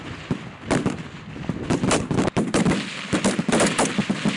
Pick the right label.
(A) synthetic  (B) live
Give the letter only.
B